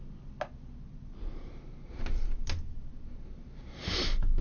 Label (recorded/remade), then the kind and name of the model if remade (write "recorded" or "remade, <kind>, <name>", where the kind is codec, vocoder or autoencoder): recorded